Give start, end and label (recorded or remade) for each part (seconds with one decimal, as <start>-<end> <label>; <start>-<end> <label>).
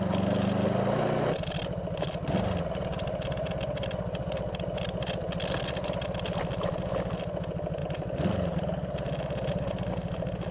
0.0-10.5 recorded